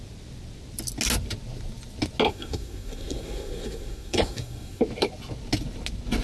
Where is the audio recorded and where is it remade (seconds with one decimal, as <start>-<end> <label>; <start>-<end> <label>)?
0.0-2.3 recorded; 2.3-4.8 remade; 4.8-6.2 recorded

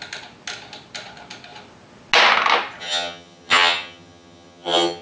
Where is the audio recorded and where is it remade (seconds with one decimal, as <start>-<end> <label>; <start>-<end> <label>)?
0.0-2.8 recorded; 2.8-5.0 remade

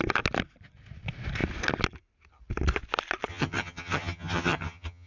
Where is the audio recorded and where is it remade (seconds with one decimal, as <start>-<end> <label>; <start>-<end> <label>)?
0.0-3.3 recorded; 3.3-5.1 remade

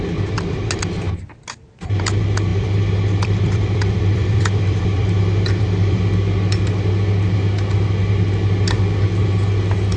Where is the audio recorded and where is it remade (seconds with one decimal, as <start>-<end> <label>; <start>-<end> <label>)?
0.0-2.5 recorded; 2.5-6.0 remade; 6.0-10.0 recorded

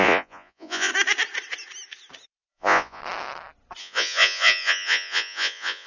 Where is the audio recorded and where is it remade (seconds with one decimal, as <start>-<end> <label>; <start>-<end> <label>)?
0.0-0.9 remade; 0.9-2.5 recorded; 2.5-3.0 remade; 3.0-3.8 recorded; 3.8-5.9 remade

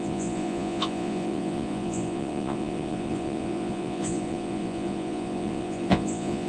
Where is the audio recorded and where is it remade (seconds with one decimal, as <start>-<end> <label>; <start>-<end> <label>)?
0.0-6.5 remade